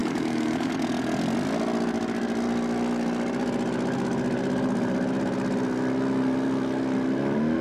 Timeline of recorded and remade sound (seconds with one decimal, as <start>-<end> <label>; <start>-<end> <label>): 0.0-0.7 remade; 0.7-7.6 recorded